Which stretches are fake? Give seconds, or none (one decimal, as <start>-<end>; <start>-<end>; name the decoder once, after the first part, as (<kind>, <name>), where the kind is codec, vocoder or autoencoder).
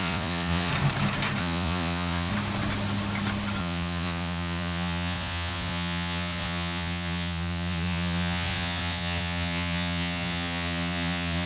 0.0-0.7 (vocoder, Vocos); 1.4-2.3; 3.6-11.5